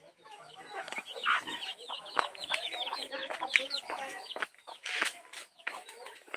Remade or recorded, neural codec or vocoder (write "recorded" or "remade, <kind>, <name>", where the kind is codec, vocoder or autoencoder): remade, autoencoder, DAC-VAE